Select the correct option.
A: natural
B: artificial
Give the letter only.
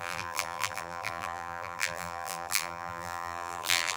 B